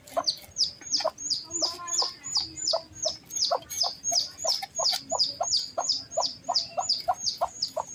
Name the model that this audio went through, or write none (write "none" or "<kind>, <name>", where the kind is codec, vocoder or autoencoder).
vocoder, BigVGAN v2